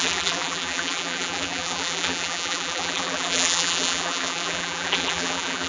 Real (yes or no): no